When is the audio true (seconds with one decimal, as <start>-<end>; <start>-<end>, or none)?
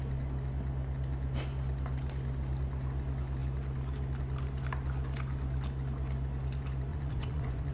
0.0-6.9